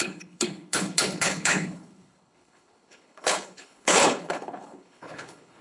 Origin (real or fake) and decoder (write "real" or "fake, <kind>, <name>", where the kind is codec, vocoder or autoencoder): fake, codec, HILCodec